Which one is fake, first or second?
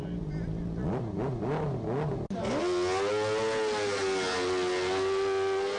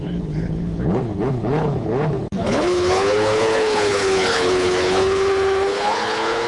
second